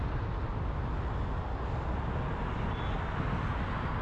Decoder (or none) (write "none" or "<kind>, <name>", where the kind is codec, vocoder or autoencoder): none